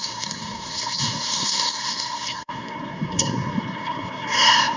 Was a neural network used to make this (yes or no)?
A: yes